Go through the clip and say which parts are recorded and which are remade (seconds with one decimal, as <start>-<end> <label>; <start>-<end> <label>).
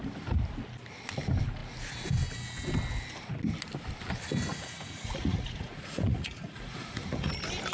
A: 0.0-4.5 recorded; 4.5-7.3 remade; 7.3-7.7 recorded